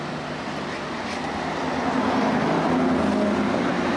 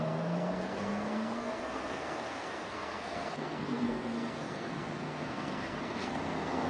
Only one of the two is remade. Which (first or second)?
second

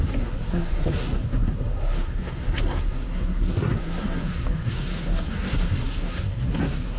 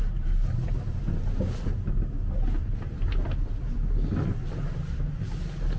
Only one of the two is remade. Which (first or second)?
first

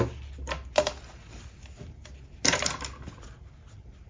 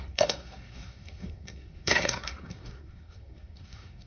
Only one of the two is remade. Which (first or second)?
second